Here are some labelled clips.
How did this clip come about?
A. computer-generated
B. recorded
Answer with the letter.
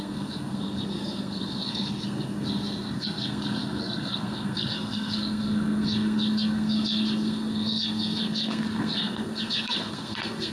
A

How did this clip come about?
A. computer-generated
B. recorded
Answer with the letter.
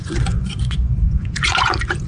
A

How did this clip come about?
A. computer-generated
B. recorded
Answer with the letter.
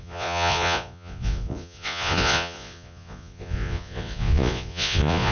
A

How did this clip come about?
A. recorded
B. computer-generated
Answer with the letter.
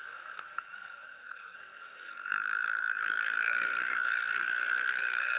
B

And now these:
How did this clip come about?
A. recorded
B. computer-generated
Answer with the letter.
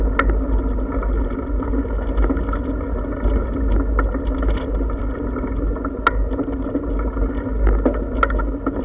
A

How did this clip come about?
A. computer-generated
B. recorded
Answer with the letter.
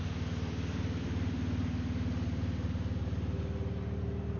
B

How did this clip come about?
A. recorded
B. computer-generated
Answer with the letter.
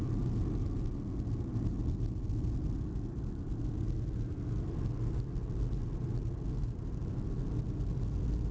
A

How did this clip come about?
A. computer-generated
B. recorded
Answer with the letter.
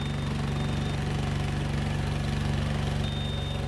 B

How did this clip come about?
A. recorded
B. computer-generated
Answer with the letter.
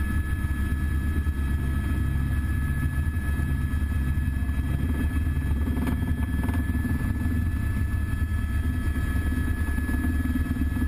A